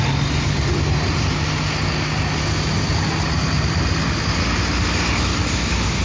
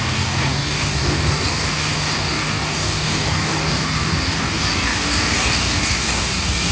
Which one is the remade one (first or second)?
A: second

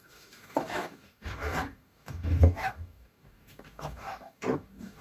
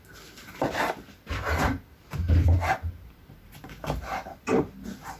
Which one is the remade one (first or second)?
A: first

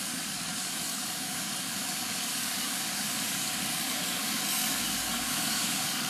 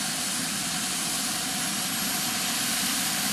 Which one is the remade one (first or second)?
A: first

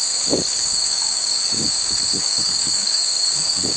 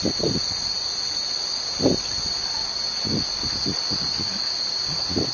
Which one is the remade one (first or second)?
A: first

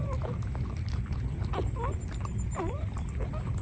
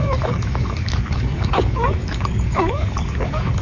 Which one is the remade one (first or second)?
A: second